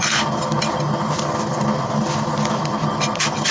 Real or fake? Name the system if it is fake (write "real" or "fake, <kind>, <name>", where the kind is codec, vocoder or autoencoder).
real